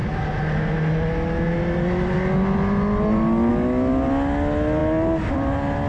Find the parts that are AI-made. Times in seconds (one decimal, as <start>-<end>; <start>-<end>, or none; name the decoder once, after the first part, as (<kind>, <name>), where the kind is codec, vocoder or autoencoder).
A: none